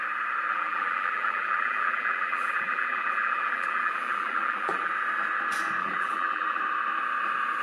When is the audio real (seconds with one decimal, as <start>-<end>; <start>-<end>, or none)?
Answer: 0.0-0.5; 4.9-5.8; 6.6-7.6